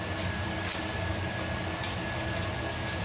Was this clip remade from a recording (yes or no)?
no